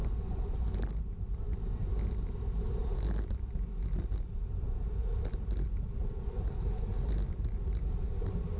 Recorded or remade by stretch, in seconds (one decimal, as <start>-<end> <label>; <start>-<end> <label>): 0.0-1.0 remade; 1.0-8.6 recorded

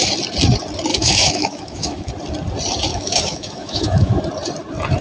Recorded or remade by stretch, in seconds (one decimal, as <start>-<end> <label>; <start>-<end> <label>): 0.0-0.9 recorded; 0.9-2.1 remade; 2.1-2.9 recorded; 2.9-4.1 remade; 4.1-5.0 recorded

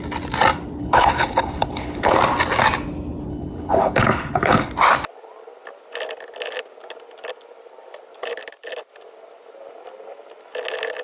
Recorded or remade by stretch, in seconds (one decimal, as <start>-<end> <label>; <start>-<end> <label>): 0.0-0.8 recorded; 0.8-2.2 remade; 2.2-3.3 recorded; 3.3-4.7 remade; 4.7-11.0 recorded

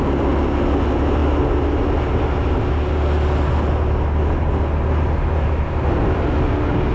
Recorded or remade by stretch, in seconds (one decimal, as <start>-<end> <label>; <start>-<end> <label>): 0.0-6.9 recorded

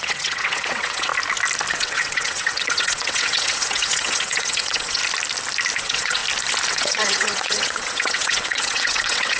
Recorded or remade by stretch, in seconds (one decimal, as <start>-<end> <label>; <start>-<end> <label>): 0.0-1.1 remade; 1.1-1.7 recorded; 1.7-5.0 remade; 5.0-5.8 recorded; 5.8-6.2 remade; 6.2-6.7 recorded; 6.7-9.4 remade